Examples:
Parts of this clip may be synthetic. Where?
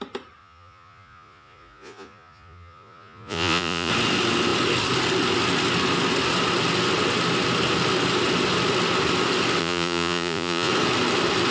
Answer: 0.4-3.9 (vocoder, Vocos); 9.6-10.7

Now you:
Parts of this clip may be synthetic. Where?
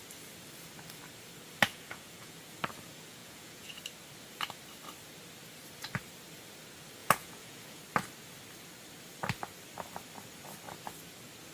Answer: 1.7-2.5 (vocoder, Vocos); 3.2-3.8; 7.0-7.8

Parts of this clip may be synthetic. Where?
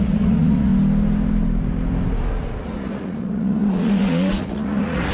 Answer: 0.0-0.7 (vocoder, Vocos); 2.6-5.1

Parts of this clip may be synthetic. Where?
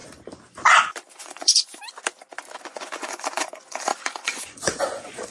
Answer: 1.2-1.6 (vocoder, Vocos); 2.6-5.3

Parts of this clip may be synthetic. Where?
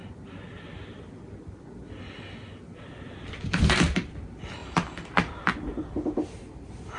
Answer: none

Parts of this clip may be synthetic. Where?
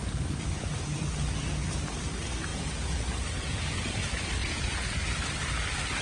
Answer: 2.5-4.0 (vocoder, Vocos); 4.4-5.0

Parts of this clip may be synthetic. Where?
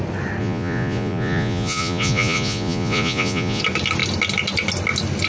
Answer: 0.4-3.6 (vocoder, Vocos)